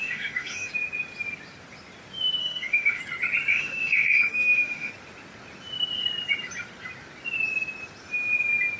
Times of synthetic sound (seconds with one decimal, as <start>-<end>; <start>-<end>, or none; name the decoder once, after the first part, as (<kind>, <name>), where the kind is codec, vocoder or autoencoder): 0.0-0.7 (autoencoder, DAC-VAE); 2.4-3.0; 3.5-4.9

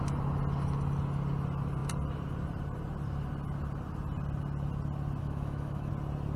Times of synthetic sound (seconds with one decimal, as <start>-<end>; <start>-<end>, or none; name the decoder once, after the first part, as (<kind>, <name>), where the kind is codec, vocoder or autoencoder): 5.2-5.9 (autoencoder, DAC-VAE)

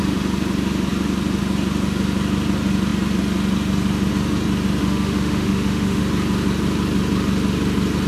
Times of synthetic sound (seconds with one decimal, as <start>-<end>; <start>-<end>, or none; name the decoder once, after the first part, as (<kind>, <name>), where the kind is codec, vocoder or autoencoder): 4.8-6.0 (autoencoder, DAC-VAE)

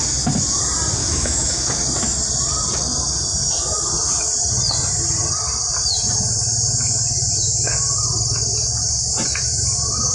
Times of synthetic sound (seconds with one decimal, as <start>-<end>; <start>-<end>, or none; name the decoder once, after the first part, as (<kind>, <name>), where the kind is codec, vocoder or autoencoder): 1.0-1.8 (autoencoder, DAC-VAE)

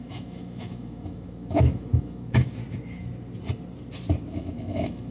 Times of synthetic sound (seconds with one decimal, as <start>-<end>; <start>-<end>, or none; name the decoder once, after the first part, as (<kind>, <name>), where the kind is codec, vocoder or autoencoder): 0.0-2.6 (autoencoder, DAC-VAE); 4.3-5.1

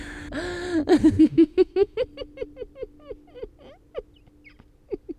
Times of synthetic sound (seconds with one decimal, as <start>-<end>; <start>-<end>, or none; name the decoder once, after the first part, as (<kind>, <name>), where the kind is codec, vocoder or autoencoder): 1.0-2.0 (autoencoder, DAC-VAE)

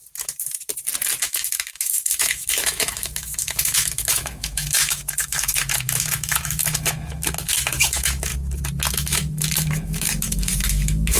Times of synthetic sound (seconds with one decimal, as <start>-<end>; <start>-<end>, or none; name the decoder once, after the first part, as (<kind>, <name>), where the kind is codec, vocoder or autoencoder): 1.2-8.3 (autoencoder, DAC-VAE); 8.9-11.2